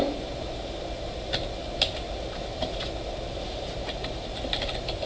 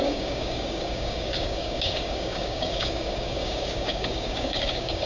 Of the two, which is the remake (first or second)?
second